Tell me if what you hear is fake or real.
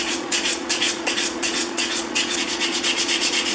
fake